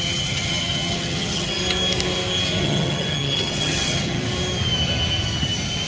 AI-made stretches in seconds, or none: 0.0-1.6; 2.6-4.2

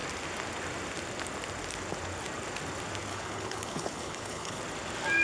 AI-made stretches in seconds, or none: 3.1-4.6

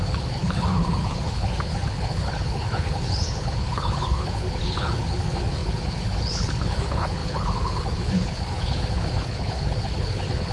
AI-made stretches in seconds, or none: 0.0-10.5